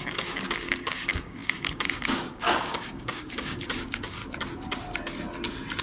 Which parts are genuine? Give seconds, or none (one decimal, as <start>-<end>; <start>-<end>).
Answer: 4.2-5.8